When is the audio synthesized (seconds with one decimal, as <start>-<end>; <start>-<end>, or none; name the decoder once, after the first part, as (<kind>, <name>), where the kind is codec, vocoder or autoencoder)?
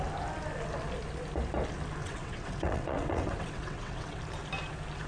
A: 2.0-4.2 (vocoder, WaveNeXt)